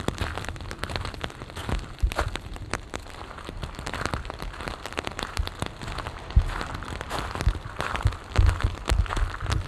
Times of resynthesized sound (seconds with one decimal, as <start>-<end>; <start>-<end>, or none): none